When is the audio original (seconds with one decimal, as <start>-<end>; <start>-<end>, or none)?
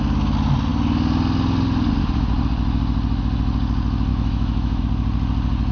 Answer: 0.0-4.1; 4.8-5.7